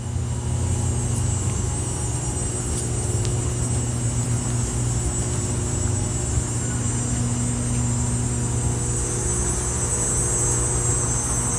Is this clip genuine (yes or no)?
yes